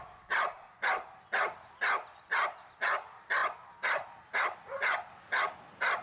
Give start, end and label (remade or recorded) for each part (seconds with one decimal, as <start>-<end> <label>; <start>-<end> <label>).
0.0-6.0 recorded